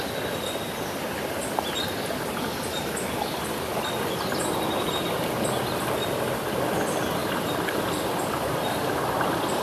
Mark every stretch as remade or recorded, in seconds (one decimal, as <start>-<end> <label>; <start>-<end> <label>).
0.0-9.6 recorded